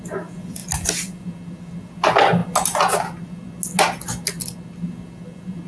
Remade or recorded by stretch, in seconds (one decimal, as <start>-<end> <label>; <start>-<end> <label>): 0.0-5.7 recorded